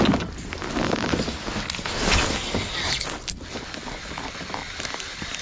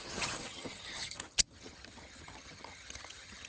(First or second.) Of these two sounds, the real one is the first